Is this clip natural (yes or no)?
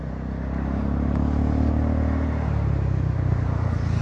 yes